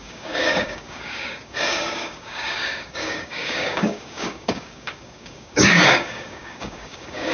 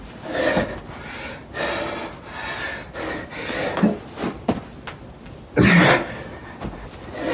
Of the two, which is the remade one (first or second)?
first